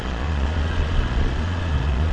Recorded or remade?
remade